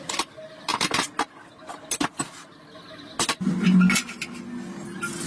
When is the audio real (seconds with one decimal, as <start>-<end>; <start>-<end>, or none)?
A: 0.0-5.3